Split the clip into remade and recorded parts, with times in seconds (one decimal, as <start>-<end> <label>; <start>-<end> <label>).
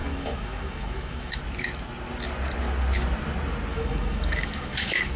0.0-1.4 remade; 1.4-3.7 recorded; 3.7-5.2 remade